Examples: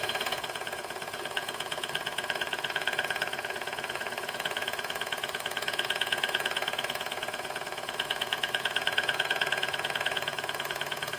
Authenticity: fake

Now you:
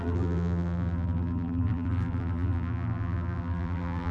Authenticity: fake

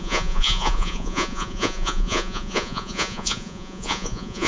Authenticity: fake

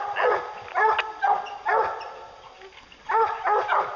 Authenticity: real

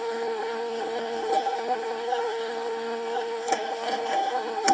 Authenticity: fake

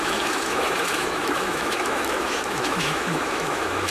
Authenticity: fake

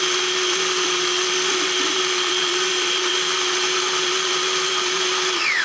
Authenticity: fake